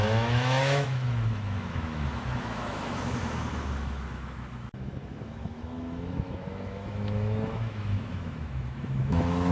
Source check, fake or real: fake